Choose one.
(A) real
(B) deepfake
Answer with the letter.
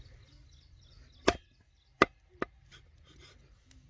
A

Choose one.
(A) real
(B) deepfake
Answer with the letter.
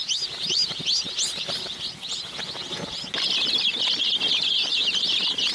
A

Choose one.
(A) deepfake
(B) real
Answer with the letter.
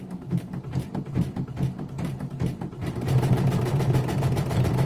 A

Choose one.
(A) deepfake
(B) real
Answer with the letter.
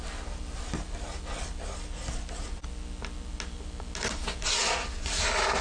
B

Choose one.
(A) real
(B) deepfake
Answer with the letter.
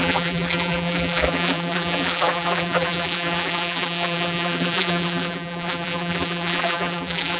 B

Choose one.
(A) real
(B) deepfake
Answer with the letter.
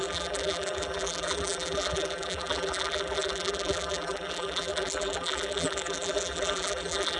B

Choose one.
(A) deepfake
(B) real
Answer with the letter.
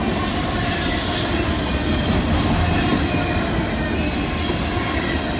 B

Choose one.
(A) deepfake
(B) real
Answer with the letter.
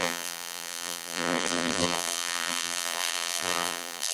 A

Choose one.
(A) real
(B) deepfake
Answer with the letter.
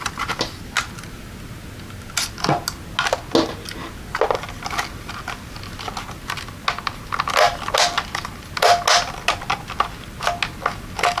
A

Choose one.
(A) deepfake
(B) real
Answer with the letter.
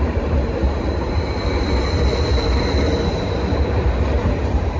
A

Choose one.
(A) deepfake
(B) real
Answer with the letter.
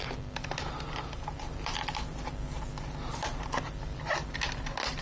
B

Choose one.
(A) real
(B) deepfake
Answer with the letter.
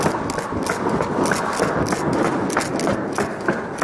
A